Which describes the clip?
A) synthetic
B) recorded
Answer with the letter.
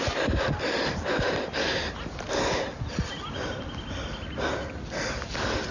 B